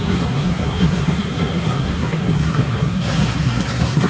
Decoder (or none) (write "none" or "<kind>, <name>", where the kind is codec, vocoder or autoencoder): codec, SNAC